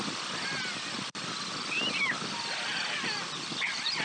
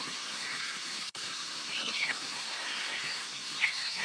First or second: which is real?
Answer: first